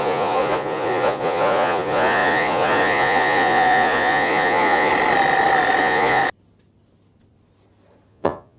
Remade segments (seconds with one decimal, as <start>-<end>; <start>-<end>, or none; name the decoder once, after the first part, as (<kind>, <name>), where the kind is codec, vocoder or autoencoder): 0.0-4.9 (vocoder, Vocos); 5.8-6.2; 8.1-8.6